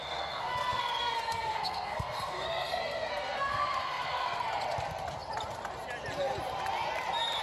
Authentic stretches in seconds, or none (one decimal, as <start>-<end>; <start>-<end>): 4.4-7.4